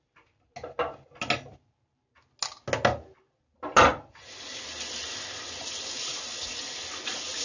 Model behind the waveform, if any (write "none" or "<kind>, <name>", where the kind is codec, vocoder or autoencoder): none